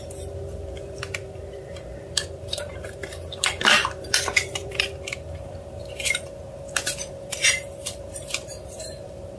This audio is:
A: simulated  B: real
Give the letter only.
A